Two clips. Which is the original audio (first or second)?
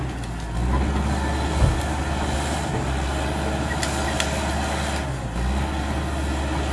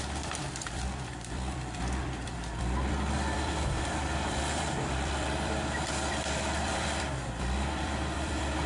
first